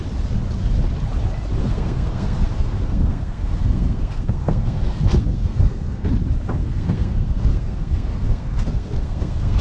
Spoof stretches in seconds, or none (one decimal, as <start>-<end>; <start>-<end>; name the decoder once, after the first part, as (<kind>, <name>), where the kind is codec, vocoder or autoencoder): 1.6-6.1 (codec, SNAC); 6.6-9.6